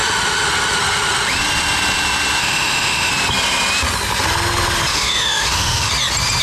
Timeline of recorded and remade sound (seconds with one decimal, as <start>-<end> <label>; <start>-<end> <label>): 0.0-2.4 recorded; 2.4-3.1 remade; 3.1-4.9 recorded; 4.9-5.9 remade; 5.9-6.4 recorded